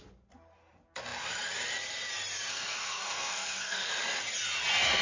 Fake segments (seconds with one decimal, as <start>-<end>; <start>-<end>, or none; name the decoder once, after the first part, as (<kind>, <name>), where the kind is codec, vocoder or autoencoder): 2.5-3.9 (codec, SNAC)